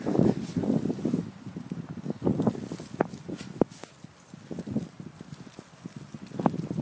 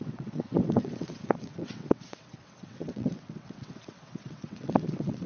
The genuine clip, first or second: first